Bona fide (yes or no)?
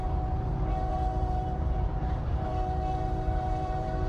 no